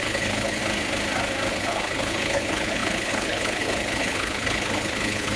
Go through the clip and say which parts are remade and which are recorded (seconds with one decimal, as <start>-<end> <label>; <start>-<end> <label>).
0.0-0.6 remade; 0.6-1.5 recorded; 1.5-5.4 remade

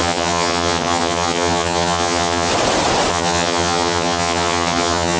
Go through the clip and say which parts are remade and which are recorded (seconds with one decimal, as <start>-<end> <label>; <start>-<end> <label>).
0.0-2.5 remade; 2.5-3.1 recorded; 3.1-5.2 remade

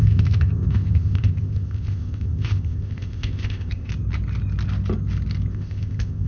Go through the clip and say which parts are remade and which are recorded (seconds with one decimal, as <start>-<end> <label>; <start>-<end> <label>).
0.0-3.9 remade; 3.9-5.5 recorded; 5.5-6.3 remade

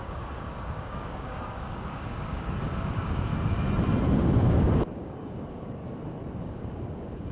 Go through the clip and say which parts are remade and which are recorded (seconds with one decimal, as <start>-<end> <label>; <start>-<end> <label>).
0.0-3.3 remade; 3.3-4.1 recorded; 4.1-5.8 remade; 5.8-6.4 recorded; 6.4-7.3 remade